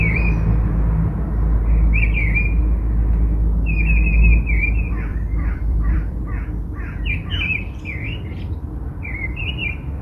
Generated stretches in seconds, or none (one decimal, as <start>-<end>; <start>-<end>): 5.1-6.2